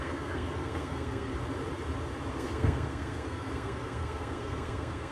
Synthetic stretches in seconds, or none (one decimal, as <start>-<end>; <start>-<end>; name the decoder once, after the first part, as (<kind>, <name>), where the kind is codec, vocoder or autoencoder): 0.0-1.3 (codec, SNAC); 2.3-5.1